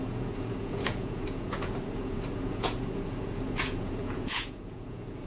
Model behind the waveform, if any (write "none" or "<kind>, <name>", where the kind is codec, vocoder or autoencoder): vocoder, Vocos